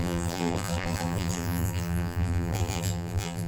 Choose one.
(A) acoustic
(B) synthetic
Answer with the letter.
B